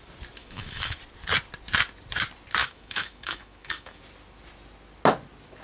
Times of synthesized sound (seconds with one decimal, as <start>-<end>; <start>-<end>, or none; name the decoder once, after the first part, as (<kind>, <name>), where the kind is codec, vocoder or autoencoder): 0.4-1.0 (autoencoder, DAC-VAE); 2.6-4.0